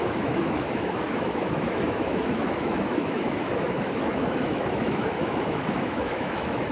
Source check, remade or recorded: remade